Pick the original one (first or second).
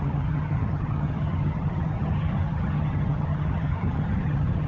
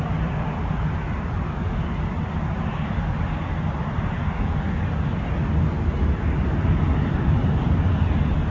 second